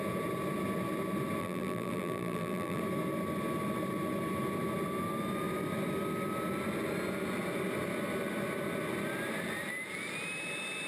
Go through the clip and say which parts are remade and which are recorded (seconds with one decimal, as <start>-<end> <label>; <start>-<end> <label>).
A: 0.0-1.4 recorded; 1.4-2.8 remade; 2.8-10.9 recorded